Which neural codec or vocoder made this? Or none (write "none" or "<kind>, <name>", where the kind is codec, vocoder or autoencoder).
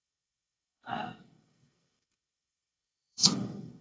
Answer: codec, SNAC